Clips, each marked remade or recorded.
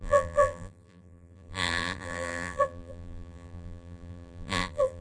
remade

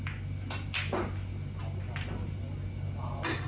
recorded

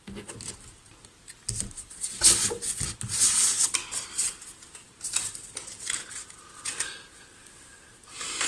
recorded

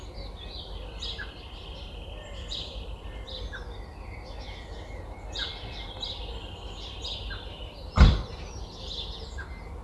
recorded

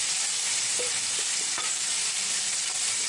remade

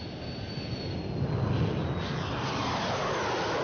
recorded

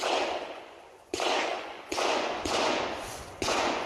remade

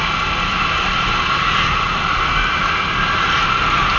recorded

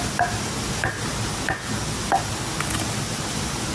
recorded